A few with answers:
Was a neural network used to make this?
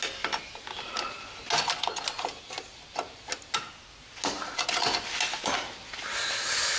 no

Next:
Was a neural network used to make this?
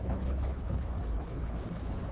yes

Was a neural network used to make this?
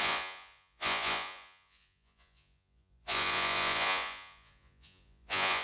yes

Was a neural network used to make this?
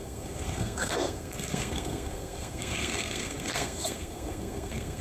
yes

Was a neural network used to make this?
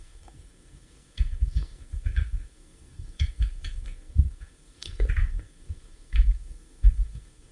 yes